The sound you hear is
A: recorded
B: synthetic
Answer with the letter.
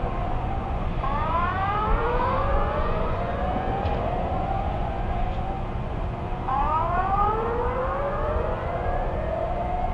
B